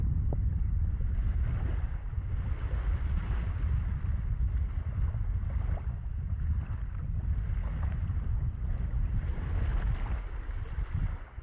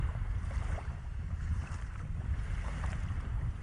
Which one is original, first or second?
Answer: first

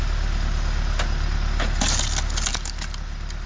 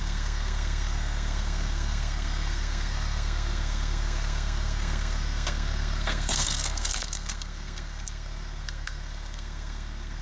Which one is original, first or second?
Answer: first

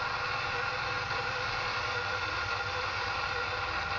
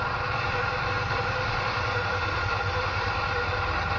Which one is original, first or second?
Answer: first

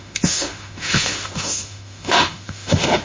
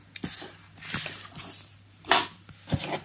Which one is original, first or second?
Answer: second